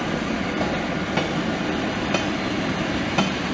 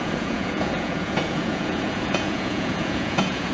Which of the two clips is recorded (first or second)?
first